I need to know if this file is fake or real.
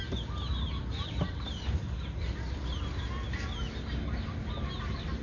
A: real